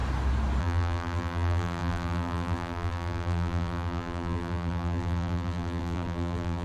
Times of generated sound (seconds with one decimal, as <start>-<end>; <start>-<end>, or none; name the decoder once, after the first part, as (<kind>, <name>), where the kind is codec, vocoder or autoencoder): 0.6-6.6 (vocoder, BigVGAN v2)